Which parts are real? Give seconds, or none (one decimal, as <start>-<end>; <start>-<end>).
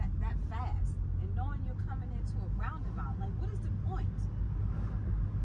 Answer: 0.0-5.4